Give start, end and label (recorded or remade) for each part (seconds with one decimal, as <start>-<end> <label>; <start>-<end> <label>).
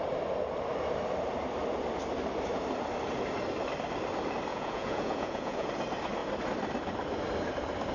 0.0-4.5 recorded; 4.5-5.7 remade; 5.7-7.9 recorded